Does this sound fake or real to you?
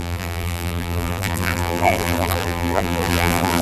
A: fake